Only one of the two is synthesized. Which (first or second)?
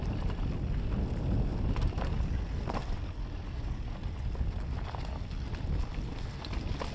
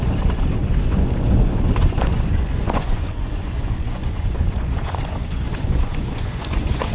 second